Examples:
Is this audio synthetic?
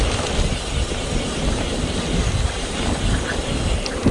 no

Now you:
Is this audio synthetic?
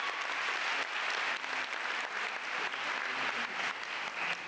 no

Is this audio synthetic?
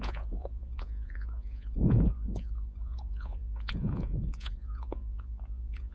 yes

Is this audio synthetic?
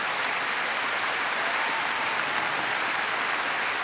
no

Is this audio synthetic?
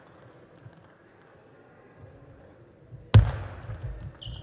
no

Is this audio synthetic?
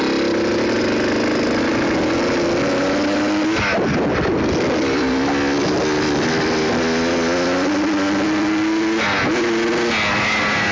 no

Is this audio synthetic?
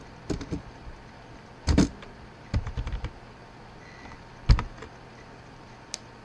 no